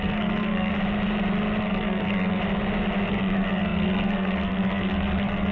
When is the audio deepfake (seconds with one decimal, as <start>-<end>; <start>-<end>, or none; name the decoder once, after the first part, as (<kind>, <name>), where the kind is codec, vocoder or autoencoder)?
0.0-0.7 (codec, SNAC); 1.6-2.4; 3.1-5.5